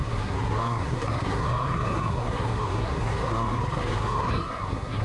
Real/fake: fake